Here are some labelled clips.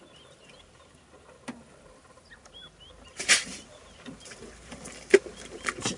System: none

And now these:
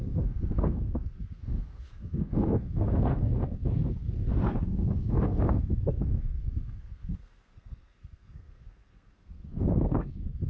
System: codec, SNAC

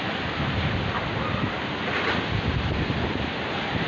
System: none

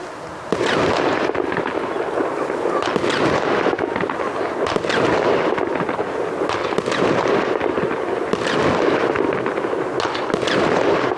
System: none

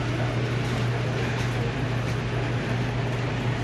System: none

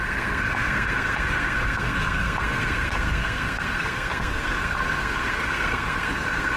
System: codec, SNAC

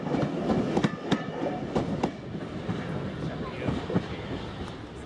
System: none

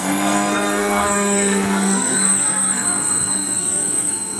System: codec, SNAC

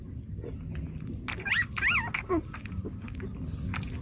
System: none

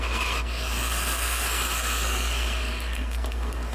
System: codec, SNAC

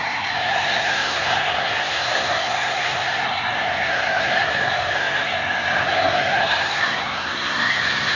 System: codec, SNAC